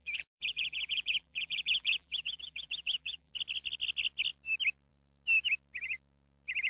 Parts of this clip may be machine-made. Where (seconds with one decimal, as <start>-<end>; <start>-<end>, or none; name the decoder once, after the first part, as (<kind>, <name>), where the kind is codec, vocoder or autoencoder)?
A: 0.0-3.3 (vocoder, BigVGAN v2)